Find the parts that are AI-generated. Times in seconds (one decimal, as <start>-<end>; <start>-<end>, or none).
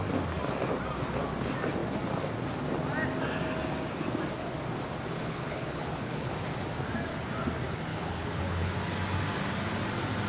5.2-6.3; 7.9-8.7